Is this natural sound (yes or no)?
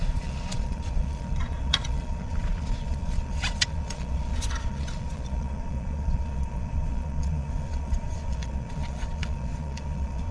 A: no